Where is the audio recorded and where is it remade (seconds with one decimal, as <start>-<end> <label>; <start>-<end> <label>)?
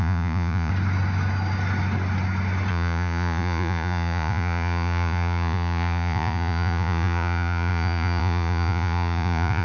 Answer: 0.0-0.7 remade; 0.7-2.7 recorded; 2.7-9.6 remade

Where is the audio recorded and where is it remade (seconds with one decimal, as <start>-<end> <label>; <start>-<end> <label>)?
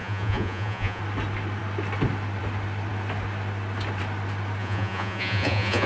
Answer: 0.0-1.0 remade; 1.0-4.6 recorded; 4.6-5.9 remade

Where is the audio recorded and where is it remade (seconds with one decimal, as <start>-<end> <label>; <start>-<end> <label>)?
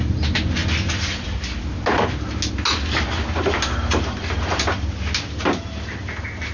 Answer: 0.0-6.5 recorded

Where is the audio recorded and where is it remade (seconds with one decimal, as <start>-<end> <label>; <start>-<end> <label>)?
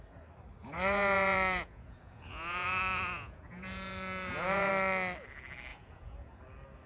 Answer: 0.0-0.6 recorded; 0.6-4.7 remade; 4.7-5.7 recorded; 5.7-6.4 remade; 6.4-6.9 recorded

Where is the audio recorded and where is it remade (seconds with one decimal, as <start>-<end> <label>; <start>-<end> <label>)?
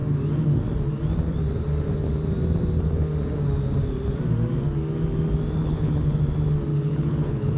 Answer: 0.0-5.6 recorded; 5.6-6.2 remade; 6.2-6.7 recorded; 6.7-7.6 remade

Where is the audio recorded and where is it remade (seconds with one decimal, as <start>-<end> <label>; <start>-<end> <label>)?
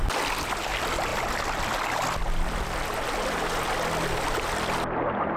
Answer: 0.0-5.4 recorded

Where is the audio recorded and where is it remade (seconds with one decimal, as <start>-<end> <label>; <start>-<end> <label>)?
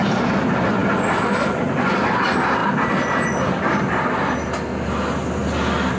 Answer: 0.0-6.0 recorded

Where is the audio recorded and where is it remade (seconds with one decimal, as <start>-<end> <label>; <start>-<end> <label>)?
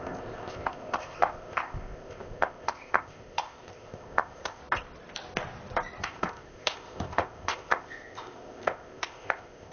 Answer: 0.0-4.6 remade; 4.6-6.0 recorded; 6.0-9.7 remade